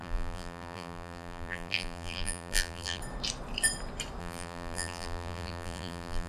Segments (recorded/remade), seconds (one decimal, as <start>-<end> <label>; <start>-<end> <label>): 0.0-3.0 remade; 3.0-4.2 recorded; 4.2-6.3 remade

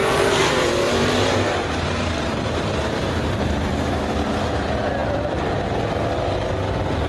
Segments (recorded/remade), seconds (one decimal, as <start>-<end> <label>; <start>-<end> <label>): 0.0-4.2 remade; 4.2-7.1 recorded

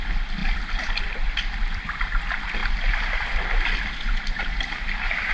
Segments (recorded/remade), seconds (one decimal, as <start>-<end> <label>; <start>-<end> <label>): 0.0-2.6 remade; 2.6-4.6 recorded; 4.6-5.3 remade

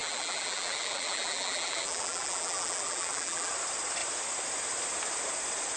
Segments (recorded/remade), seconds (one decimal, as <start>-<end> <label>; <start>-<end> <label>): 0.0-3.5 remade; 3.5-5.8 recorded

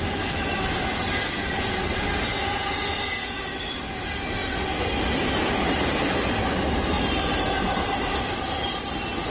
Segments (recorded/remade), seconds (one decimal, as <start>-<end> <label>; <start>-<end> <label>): 0.0-4.4 recorded; 4.4-8.8 remade; 8.8-9.3 recorded

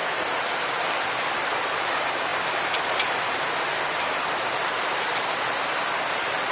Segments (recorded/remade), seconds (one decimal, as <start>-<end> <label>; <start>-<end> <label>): 0.0-0.7 remade; 0.7-6.5 recorded